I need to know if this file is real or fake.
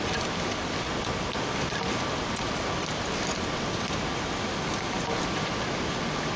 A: real